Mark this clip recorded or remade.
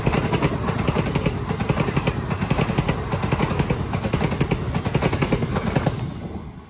recorded